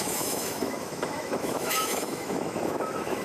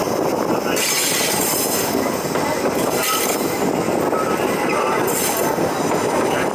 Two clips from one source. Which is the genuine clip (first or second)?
second